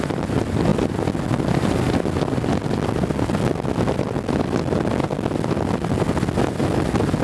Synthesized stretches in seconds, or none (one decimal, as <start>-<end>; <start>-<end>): none